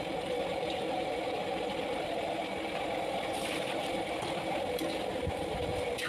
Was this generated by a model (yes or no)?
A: yes